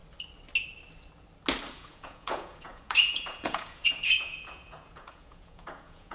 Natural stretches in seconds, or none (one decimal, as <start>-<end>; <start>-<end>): 0.0-1.7